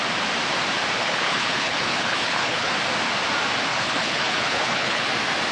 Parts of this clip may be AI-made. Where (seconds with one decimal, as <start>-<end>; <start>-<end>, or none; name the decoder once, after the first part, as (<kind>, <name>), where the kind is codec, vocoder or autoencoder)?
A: 1.0-2.7 (codec, HILCodec); 3.7-5.1